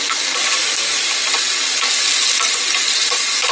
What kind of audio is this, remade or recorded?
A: recorded